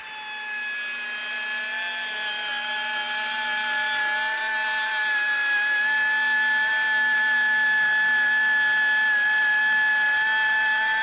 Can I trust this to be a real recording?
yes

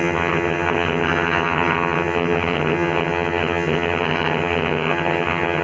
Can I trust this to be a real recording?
no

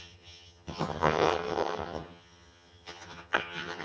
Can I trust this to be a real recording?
no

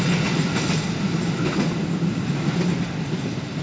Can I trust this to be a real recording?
yes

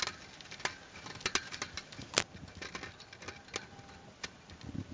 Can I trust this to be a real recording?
yes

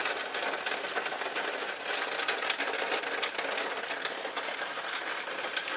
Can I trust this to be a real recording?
yes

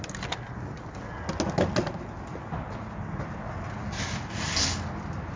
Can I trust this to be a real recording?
yes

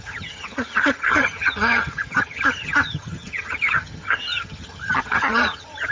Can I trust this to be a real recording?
no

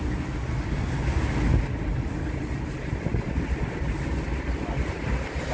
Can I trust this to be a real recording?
yes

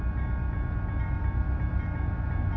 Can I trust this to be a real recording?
yes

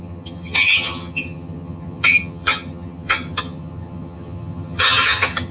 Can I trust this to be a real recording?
no